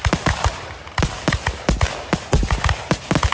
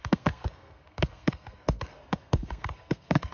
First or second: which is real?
first